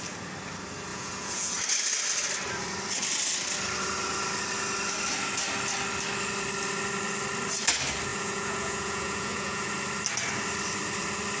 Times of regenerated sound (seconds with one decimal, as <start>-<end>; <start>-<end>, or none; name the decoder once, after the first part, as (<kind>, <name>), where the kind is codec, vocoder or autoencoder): 0.9-1.5 (vocoder, Vocos); 8.1-9.7